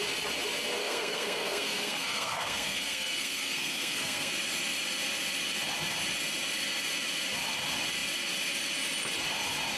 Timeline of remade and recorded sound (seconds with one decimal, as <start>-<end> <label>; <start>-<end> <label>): 0.0-0.8 recorded; 0.8-4.3 remade; 4.3-9.8 recorded

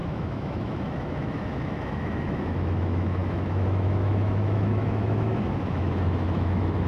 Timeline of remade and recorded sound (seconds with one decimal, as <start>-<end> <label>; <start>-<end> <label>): 0.0-6.9 remade

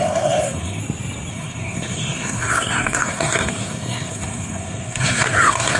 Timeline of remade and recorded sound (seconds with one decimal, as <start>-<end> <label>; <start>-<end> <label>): 0.0-0.8 remade; 0.8-1.3 recorded; 1.3-5.8 remade